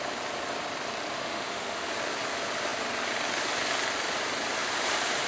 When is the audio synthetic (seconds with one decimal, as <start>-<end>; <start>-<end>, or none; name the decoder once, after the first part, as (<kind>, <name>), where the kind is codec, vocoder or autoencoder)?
1.1-1.9 (autoencoder, DAC-VAE)

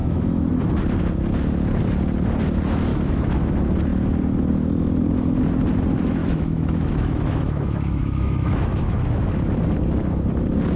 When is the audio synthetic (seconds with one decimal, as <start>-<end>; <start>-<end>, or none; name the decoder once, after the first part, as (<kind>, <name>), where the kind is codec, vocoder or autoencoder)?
0.0-0.7 (autoencoder, DAC-VAE); 2.9-3.5; 6.2-9.1